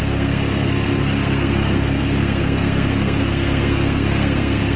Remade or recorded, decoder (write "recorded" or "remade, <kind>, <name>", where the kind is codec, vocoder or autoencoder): remade, codec, SNAC